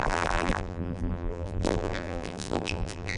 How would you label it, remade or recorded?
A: remade